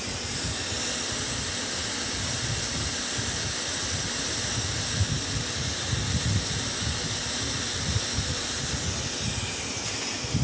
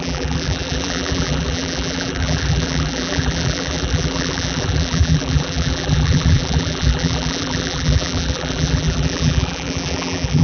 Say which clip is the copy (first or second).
second